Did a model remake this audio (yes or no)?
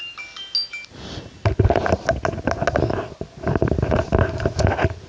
no